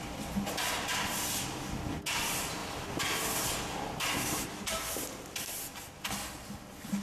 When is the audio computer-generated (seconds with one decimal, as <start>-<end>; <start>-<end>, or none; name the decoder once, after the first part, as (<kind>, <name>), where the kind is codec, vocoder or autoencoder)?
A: none